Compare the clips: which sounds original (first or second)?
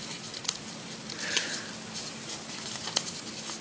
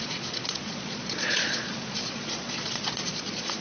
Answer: first